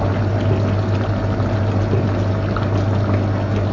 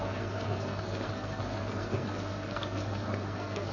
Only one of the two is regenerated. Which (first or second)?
second